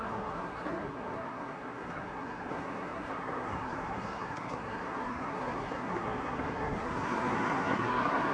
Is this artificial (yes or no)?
yes